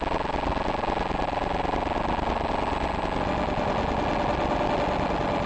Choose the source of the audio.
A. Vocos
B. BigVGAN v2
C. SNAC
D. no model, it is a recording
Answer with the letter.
D